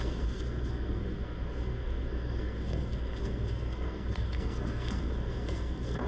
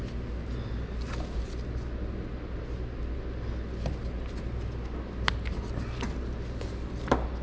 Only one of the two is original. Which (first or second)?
second